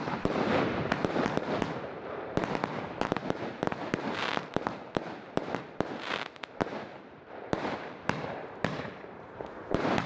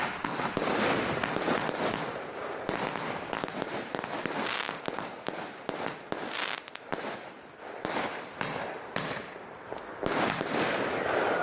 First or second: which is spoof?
first